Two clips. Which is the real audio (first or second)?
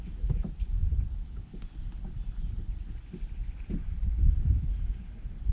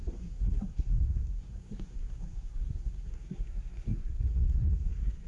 first